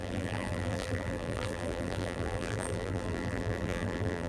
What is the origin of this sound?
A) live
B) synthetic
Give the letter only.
B